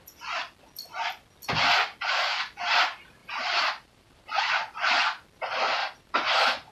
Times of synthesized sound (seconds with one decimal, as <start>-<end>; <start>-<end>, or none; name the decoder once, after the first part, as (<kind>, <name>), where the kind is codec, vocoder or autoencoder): 3.2-4.4 (vocoder, BigVGAN v2); 5.8-6.7